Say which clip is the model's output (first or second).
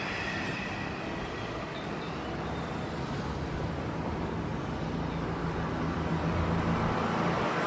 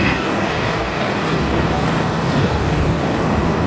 second